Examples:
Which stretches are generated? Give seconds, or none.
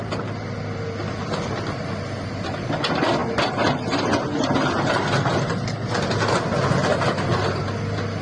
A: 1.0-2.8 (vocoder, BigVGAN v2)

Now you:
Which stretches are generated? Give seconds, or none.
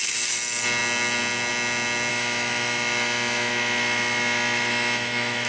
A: 2.1-5.5 (autoencoder, DAC-VAE)